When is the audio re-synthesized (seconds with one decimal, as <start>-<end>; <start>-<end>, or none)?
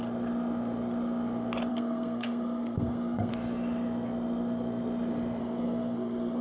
1.7-3.3; 5.4-6.4